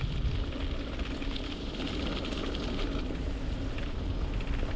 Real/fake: real